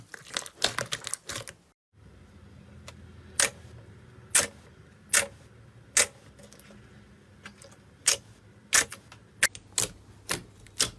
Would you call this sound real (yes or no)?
yes